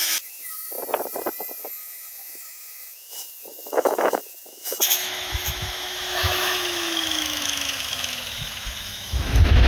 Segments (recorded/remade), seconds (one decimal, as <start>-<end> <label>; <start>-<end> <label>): 0.0-0.8 remade; 0.8-1.6 recorded; 1.6-9.7 remade